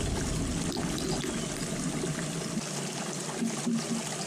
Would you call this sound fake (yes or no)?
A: no